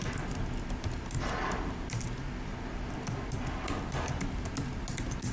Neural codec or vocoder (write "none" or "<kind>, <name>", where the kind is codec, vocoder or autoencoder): none